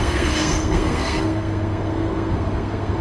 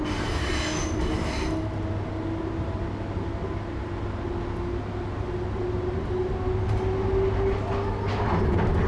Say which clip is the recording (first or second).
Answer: second